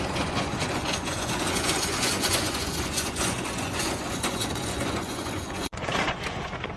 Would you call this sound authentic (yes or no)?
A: no